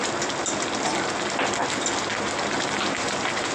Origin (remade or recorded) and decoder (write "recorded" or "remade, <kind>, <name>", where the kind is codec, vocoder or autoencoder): recorded